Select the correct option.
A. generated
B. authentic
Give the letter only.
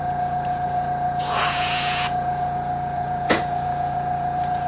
A